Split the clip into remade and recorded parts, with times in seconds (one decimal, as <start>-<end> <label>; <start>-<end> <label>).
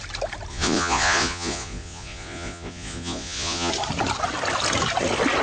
0.0-0.5 recorded; 0.5-3.7 remade; 3.7-5.4 recorded